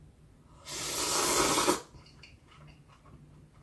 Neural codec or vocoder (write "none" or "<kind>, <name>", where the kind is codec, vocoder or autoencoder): none